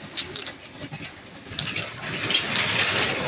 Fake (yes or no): no